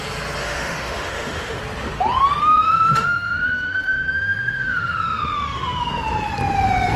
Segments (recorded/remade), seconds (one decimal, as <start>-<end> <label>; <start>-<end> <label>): 0.0-0.4 recorded; 0.4-1.6 remade; 1.6-2.4 recorded; 2.4-5.9 remade; 5.9-7.0 recorded